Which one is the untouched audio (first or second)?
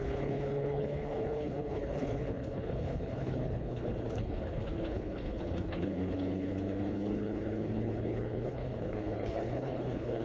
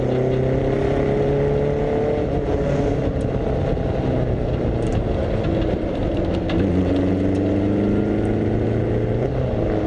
second